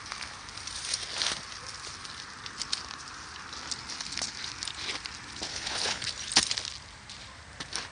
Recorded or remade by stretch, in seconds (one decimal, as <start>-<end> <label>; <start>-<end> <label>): 0.0-5.5 recorded; 5.5-6.1 remade; 6.1-7.9 recorded